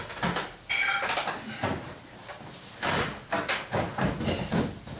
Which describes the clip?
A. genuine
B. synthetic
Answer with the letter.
A